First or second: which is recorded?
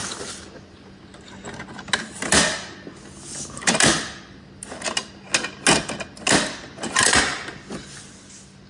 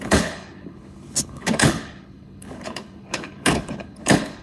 first